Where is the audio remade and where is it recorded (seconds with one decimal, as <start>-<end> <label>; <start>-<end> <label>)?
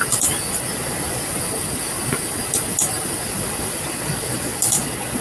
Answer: 0.0-0.7 recorded; 0.7-1.3 remade; 1.3-3.2 recorded; 3.2-5.2 remade